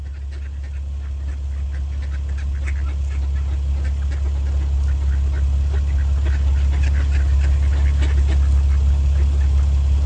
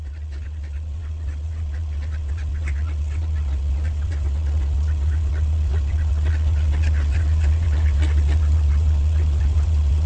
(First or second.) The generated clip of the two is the second